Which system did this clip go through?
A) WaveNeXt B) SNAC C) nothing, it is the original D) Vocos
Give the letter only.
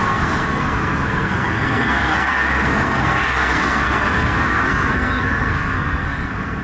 B